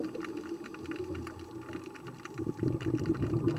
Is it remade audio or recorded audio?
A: recorded